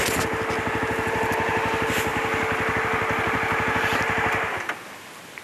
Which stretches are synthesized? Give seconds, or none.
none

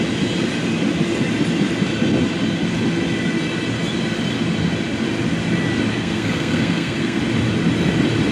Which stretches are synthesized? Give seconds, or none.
5.9-7.2 (codec, SNAC)

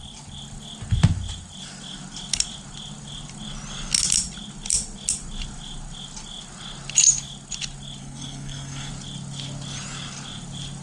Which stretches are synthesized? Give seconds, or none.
8.0-8.9 (codec, SNAC)

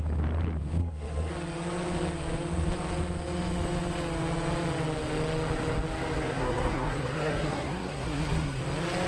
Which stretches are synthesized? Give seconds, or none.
0.8-1.3 (codec, SNAC); 6.3-8.6

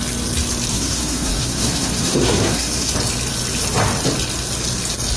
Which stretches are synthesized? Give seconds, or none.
0.7-2.9 (codec, SNAC)

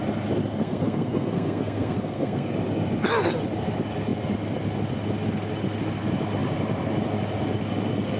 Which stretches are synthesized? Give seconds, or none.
0.6-2.5 (codec, SNAC)